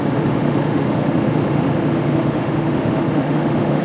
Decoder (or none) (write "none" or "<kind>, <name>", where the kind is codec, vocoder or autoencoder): autoencoder, DAC-VAE